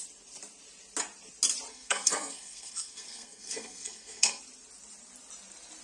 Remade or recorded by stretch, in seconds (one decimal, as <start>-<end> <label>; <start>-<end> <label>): 0.0-1.7 recorded; 1.7-4.4 remade; 4.4-5.8 recorded